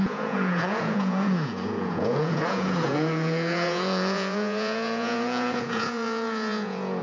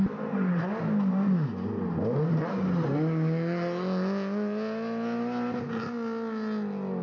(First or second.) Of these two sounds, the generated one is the first